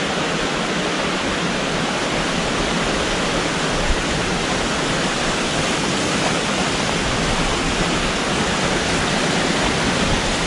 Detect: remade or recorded recorded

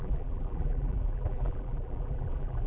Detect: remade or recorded remade